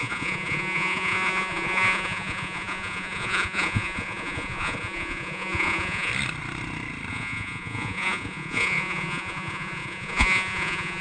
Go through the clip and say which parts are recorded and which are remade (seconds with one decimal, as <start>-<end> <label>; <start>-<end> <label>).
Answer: 0.0-6.1 remade; 6.1-7.1 recorded; 7.1-11.0 remade